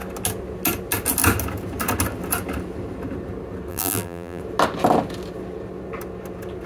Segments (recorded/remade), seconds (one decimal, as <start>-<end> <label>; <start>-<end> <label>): 0.0-3.7 recorded; 3.7-4.4 remade; 4.4-6.7 recorded